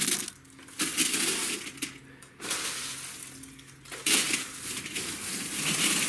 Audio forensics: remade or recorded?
recorded